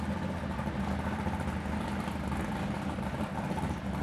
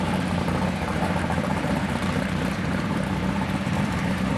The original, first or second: first